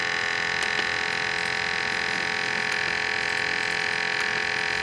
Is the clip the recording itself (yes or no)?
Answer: yes